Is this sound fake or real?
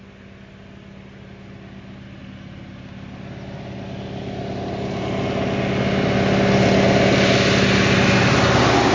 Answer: real